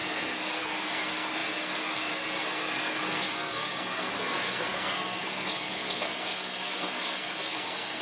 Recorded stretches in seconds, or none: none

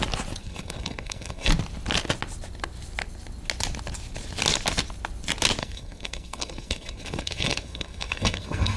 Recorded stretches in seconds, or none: 0.0-0.4; 1.5-5.6

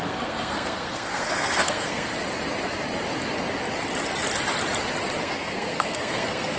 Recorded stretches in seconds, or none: 2.1-5.2

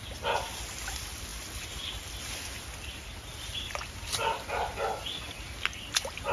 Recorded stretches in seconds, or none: 0.0-6.3

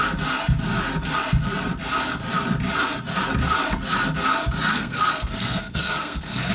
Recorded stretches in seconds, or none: 0.0-4.7